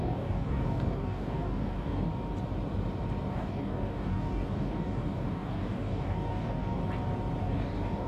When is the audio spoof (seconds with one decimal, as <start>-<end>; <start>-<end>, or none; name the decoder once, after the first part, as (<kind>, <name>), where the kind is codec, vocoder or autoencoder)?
0.0-2.1 (codec, DAC); 3.3-6.8; 7.4-8.1